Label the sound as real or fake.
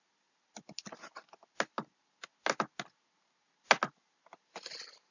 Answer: real